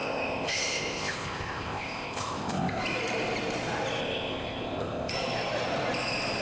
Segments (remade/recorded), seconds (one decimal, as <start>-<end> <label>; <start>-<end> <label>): 0.0-2.8 remade; 2.8-4.0 recorded; 4.0-5.1 remade; 5.1-6.4 recorded